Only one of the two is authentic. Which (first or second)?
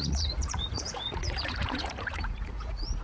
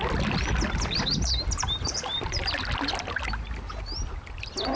second